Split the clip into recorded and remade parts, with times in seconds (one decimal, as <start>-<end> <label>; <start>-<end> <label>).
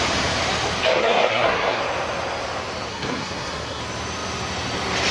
0.0-1.0 recorded; 1.0-1.8 remade; 1.8-2.9 recorded; 2.9-3.8 remade; 3.8-5.1 recorded